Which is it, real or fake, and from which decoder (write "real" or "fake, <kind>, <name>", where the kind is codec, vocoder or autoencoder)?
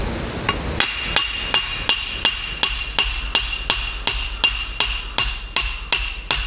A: real